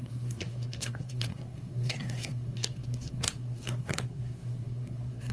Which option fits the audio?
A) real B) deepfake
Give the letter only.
B